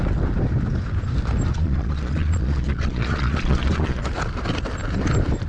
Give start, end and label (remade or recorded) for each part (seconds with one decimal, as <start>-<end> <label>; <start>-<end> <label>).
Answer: 0.0-1.5 recorded; 1.5-4.1 remade; 4.1-5.5 recorded